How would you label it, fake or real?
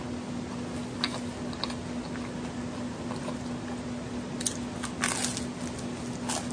real